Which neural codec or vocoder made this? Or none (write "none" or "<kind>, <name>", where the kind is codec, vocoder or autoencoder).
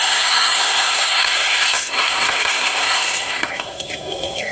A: codec, SNAC